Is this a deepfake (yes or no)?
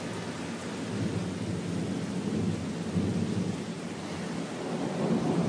no